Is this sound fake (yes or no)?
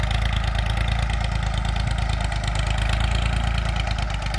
no